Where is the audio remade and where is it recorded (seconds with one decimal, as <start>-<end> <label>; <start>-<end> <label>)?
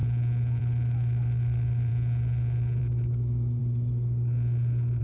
0.0-0.6 recorded; 0.6-1.9 remade; 1.9-2.8 recorded; 2.8-3.6 remade; 3.6-5.0 recorded